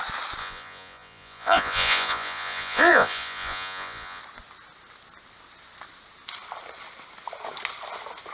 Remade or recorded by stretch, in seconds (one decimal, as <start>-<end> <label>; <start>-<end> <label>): 0.0-0.4 recorded; 0.4-4.2 remade; 4.2-8.3 recorded